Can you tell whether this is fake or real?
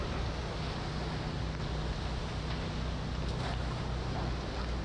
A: real